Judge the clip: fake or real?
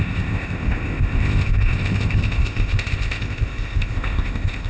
fake